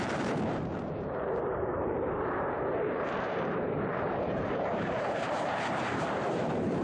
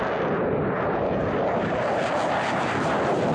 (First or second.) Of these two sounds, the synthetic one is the first